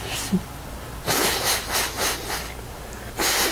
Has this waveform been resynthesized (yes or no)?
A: no